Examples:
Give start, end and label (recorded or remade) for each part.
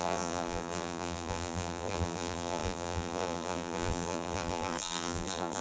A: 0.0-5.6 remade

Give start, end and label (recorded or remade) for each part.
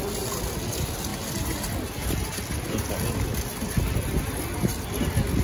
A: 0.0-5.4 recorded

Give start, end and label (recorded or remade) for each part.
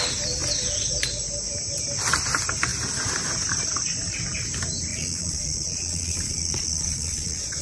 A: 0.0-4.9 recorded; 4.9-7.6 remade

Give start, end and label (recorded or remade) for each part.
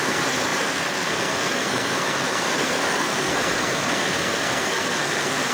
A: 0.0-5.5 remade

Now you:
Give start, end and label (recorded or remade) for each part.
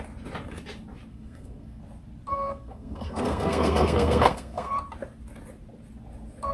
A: 0.0-1.1 recorded; 1.1-1.8 remade; 1.8-2.3 recorded; 2.3-4.7 remade; 4.7-6.5 recorded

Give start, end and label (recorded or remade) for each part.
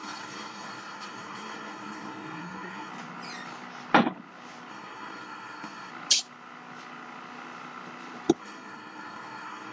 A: 0.0-2.9 remade; 2.9-4.7 recorded; 4.7-5.9 remade; 5.9-8.4 recorded; 8.4-9.7 remade